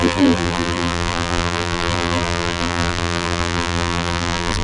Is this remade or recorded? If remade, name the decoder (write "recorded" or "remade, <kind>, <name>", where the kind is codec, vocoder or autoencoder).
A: remade, vocoder, BigVGAN v2